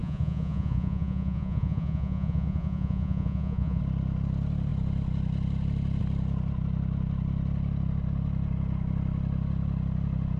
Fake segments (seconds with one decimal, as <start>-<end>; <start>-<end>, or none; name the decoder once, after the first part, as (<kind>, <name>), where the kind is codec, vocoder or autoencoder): 0.0-3.8 (vocoder, Vocos)